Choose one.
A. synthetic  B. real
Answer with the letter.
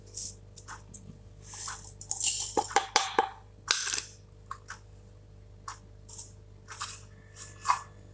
B